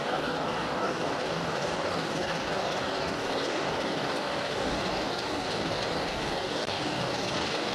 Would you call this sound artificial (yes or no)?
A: yes